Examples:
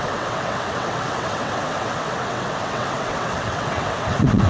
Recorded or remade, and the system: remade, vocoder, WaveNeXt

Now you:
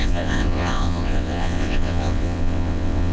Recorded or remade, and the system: remade, vocoder, WaveNeXt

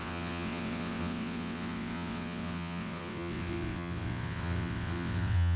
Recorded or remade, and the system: remade, vocoder, WaveNeXt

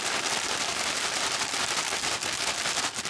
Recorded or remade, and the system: recorded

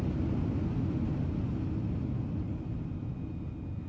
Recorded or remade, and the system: recorded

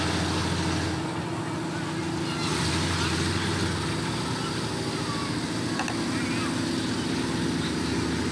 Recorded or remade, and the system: recorded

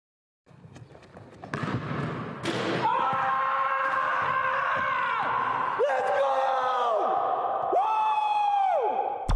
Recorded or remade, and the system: recorded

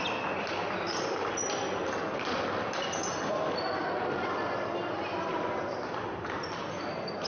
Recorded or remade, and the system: recorded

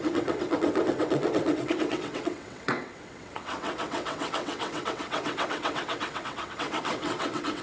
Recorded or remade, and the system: remade, vocoder, WaveNeXt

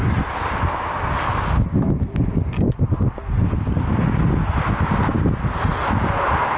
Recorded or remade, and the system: recorded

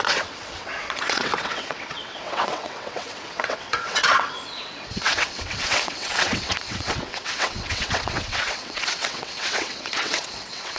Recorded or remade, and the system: remade, vocoder, WaveNeXt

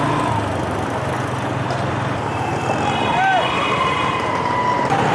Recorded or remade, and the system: recorded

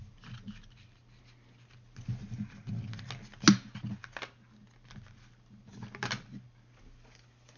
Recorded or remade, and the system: recorded